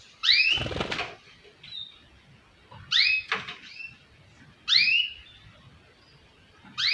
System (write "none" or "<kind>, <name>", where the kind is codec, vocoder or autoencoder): none